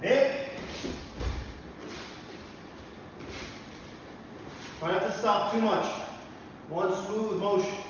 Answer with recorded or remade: recorded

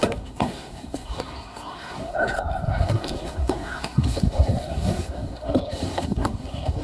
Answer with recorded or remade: remade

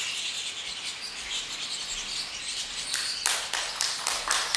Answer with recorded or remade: recorded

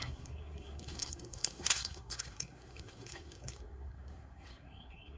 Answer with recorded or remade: remade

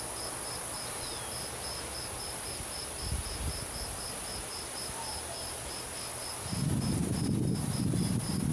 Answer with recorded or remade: recorded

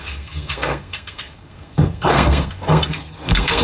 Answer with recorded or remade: remade